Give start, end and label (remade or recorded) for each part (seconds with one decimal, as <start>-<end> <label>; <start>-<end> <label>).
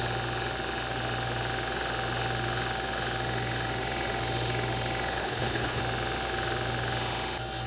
0.0-5.2 recorded; 5.2-5.8 remade; 5.8-7.7 recorded